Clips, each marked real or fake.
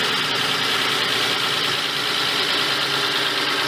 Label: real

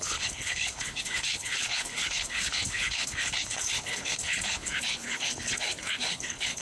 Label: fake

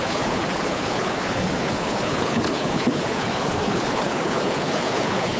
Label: fake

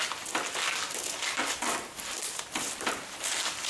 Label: real